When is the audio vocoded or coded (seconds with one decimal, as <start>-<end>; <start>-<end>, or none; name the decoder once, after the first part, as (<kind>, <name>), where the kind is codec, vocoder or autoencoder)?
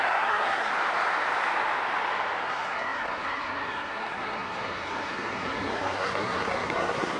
0.0-0.7 (codec, SNAC); 2.4-7.2